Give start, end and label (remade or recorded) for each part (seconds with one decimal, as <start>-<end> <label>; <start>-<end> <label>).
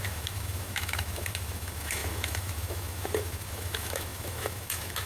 0.0-5.1 remade